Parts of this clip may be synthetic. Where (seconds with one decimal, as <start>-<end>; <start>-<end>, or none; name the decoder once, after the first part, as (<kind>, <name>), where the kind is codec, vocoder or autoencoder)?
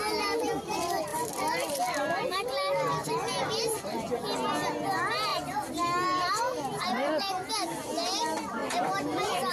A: 1.1-1.7 (vocoder, BigVGAN v2); 8.6-9.5